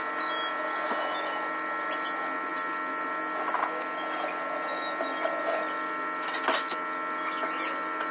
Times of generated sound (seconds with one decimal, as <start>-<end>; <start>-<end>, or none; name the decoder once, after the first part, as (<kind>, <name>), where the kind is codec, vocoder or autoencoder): none